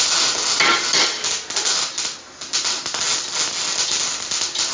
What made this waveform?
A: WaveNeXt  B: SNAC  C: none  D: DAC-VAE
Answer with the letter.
C